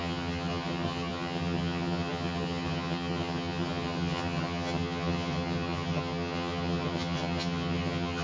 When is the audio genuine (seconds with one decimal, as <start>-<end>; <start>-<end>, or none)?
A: none